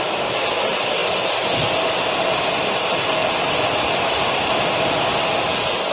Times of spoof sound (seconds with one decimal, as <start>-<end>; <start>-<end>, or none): none